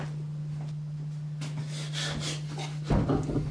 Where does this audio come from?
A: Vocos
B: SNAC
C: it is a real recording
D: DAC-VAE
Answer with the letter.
C